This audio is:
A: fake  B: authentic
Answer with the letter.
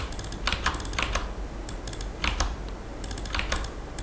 B